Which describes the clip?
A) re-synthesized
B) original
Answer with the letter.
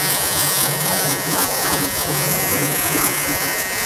A